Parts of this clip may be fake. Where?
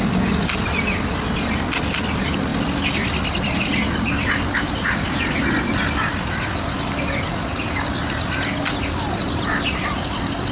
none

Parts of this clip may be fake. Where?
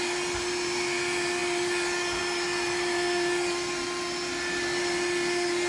none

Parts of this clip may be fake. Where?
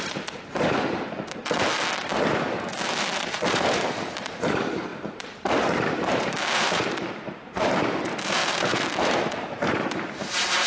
0.0-1.4 (vocoder, BigVGAN v2); 2.5-10.7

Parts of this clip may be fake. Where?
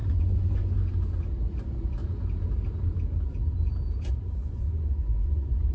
0.0-0.8 (vocoder, Vocos); 4.4-5.7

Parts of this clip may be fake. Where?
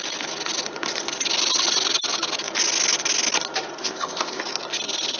3.8-4.4 (codec, ZipCodec)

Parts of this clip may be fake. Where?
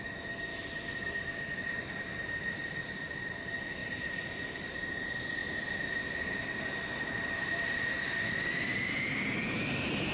0.5-2.4 (vocoder, BigVGAN v2)